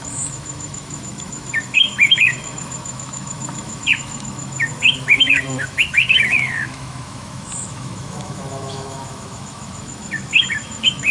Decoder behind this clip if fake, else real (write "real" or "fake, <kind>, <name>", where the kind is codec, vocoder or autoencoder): fake, autoencoder, DAC-VAE